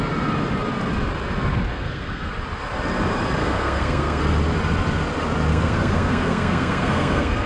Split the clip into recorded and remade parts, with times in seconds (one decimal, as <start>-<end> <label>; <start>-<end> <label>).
0.0-1.7 recorded; 1.7-2.3 remade; 2.3-3.4 recorded; 3.4-4.2 remade; 4.2-5.5 recorded; 5.5-7.5 remade